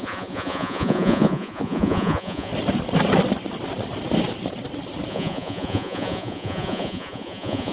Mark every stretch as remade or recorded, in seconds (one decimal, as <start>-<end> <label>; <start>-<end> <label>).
0.0-2.5 remade; 2.5-5.1 recorded; 5.1-7.7 remade